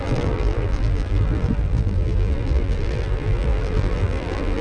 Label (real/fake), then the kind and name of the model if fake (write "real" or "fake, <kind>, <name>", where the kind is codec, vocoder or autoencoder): fake, vocoder, BigVGAN v2